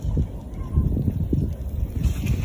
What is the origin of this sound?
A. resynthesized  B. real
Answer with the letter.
A